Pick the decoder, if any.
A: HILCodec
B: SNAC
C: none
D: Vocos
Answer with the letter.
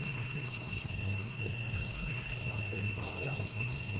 B